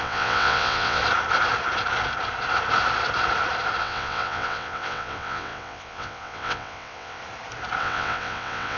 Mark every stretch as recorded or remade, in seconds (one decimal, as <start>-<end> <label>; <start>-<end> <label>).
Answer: 0.0-1.0 remade; 1.0-3.8 recorded; 3.8-7.2 remade; 7.2-7.8 recorded; 7.8-8.8 remade